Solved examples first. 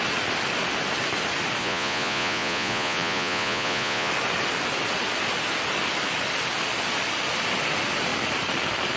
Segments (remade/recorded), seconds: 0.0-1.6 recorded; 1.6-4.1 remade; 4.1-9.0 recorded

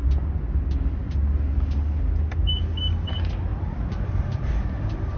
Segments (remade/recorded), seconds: 0.0-3.5 recorded; 3.5-4.5 remade; 4.5-5.2 recorded

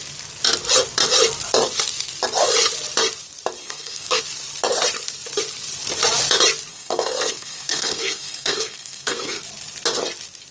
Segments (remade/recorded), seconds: 0.0-3.6 recorded; 3.6-4.2 remade; 4.2-6.7 recorded; 6.7-9.4 remade; 9.4-10.5 recorded

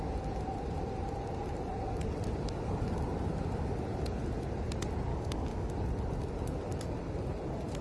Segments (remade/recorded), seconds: 0.0-5.1 recorded; 5.1-5.7 remade; 5.7-7.8 recorded

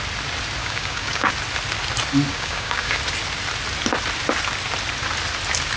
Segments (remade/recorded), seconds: 0.0-0.6 recorded; 0.6-1.3 remade; 1.3-2.3 recorded; 2.3-3.0 remade; 3.0-5.8 recorded

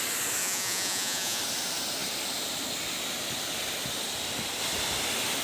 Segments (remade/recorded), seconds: 0.0-0.4 recorded; 0.4-1.4 remade; 1.4-5.4 recorded

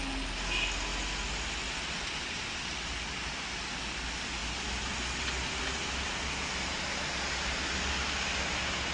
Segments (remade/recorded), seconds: 0.0-8.9 recorded